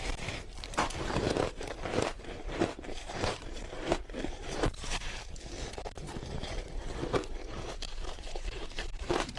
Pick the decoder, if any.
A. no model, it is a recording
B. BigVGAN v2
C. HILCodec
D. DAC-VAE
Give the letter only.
B